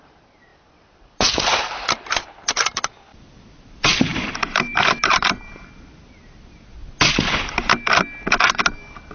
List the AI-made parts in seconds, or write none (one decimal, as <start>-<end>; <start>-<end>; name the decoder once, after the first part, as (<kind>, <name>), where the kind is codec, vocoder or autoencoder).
0.5-2.2 (vocoder, BigVGAN v2); 3.1-5.9